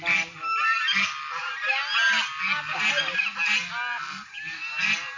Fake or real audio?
real